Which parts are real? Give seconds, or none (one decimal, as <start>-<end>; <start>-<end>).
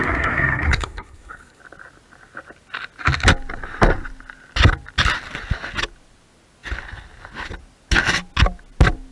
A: 1.6-9.1